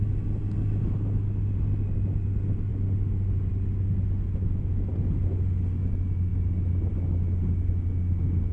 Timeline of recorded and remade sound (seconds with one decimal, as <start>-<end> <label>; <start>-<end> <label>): 0.0-8.5 recorded